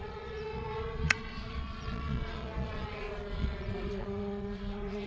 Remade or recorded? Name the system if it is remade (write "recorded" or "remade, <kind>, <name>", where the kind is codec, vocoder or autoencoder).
remade, vocoder, Vocos